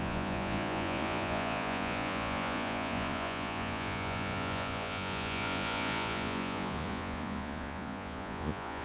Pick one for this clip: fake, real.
fake